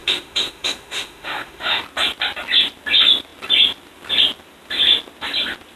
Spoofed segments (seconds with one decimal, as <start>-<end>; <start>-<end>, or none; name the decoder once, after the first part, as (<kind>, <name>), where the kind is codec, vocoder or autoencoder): 0.0-1.8 (autoencoder, DAC-VAE)